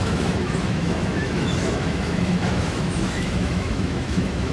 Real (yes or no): no